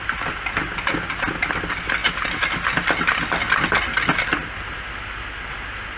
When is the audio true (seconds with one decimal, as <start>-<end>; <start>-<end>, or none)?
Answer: 0.0-6.0